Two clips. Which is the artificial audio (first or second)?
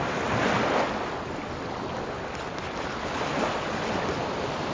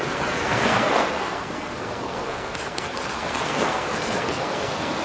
second